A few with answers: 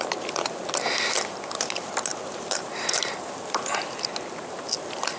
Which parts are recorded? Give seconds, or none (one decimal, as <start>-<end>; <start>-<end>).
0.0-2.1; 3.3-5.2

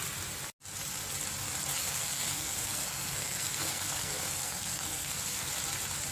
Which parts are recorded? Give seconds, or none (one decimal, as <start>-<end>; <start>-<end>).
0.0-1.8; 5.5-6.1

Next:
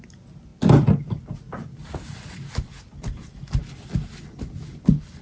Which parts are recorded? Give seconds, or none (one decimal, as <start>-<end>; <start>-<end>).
0.0-5.2

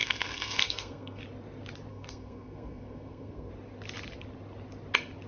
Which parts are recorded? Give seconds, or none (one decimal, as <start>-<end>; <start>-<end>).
1.2-1.9; 3.5-5.3

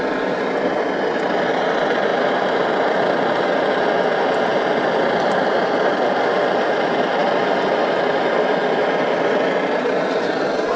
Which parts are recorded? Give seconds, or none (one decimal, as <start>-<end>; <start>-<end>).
0.0-10.8